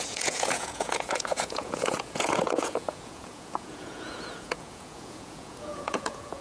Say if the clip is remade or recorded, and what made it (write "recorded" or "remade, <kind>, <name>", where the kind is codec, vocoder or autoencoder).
remade, vocoder, Vocos